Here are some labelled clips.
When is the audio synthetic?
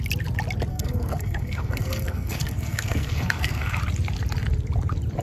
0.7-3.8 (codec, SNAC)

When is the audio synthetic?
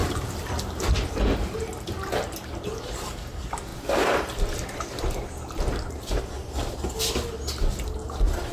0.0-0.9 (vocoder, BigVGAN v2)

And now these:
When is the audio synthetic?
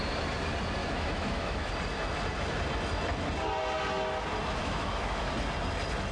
0.8-1.7 (autoencoder, DAC-VAE); 4.6-5.3